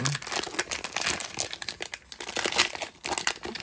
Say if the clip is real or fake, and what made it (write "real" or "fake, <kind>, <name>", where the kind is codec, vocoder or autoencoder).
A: real